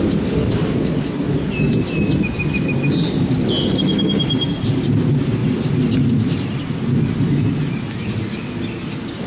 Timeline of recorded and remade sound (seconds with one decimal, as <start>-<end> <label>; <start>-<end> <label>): 0.0-9.3 recorded